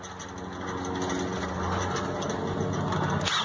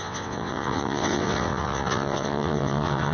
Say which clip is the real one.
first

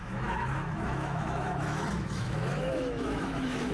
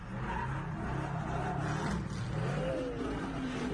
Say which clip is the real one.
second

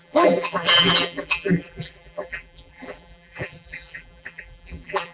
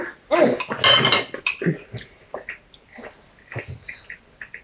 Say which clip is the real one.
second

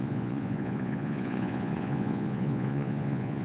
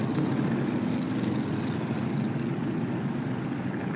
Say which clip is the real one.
second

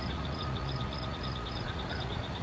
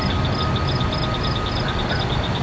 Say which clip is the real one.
second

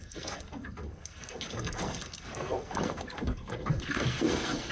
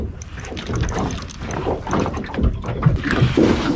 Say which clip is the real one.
second